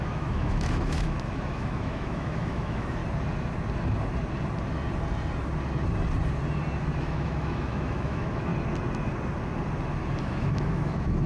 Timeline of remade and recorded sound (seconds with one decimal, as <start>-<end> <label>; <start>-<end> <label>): 0.0-3.0 remade; 3.0-7.0 recorded; 7.0-8.5 remade; 8.5-10.2 recorded; 10.2-11.3 remade